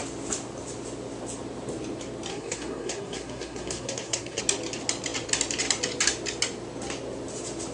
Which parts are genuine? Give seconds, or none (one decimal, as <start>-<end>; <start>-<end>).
0.0-2.3; 4.4-7.7